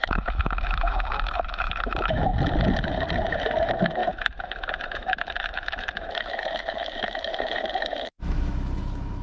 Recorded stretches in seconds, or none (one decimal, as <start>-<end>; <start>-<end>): 2.3-3.2